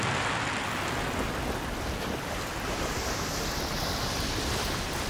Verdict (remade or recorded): recorded